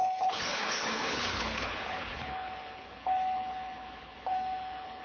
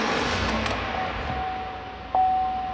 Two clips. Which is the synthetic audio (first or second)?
first